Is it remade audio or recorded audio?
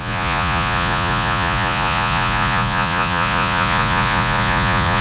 remade